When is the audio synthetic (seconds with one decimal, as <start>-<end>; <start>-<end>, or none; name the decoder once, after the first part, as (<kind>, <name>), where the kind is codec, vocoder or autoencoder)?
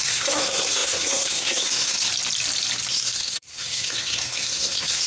0.0-2.1 (codec, SNAC); 2.9-5.1